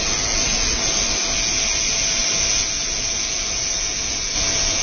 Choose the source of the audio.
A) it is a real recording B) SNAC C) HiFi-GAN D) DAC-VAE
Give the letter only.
A